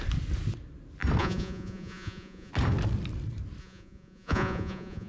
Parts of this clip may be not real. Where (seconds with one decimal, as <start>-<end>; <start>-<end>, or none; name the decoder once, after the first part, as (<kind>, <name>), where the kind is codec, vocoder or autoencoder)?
1.2-2.5 (vocoder, Vocos); 3.6-5.1